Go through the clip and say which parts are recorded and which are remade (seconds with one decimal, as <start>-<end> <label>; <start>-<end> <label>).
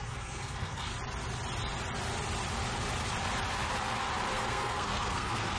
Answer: 0.0-0.9 remade; 0.9-4.3 recorded; 4.3-5.6 remade